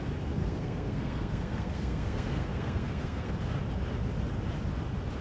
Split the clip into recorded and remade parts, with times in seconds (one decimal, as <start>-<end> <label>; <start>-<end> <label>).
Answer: 0.0-0.4 recorded; 0.4-3.3 remade; 3.3-5.2 recorded